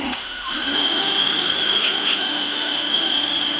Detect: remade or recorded remade